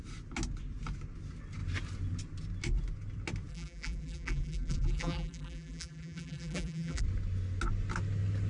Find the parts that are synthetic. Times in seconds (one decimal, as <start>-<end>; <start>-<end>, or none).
3.5-7.0